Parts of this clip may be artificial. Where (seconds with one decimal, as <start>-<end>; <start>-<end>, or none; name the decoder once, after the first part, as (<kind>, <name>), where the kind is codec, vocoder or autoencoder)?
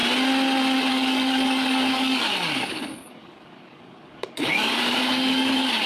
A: 0.9-5.9 (codec, DAC)